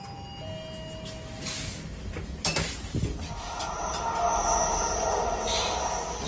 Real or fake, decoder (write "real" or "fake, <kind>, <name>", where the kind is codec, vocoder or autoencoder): real